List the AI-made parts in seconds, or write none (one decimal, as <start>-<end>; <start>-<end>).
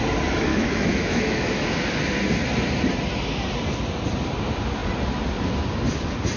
0.5-1.7